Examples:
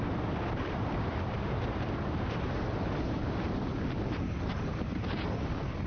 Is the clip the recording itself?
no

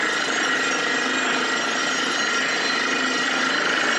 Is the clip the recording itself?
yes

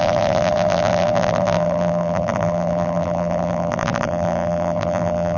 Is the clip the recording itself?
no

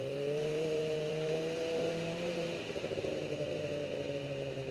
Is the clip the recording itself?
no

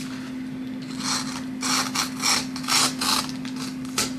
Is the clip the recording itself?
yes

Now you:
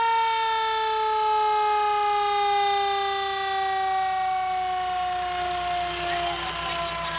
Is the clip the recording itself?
yes